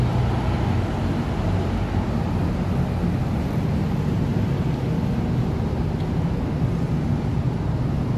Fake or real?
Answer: real